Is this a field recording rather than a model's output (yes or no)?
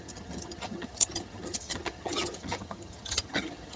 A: no